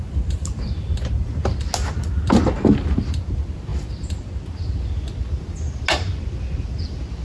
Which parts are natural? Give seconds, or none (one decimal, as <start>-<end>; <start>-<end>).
0.0-7.2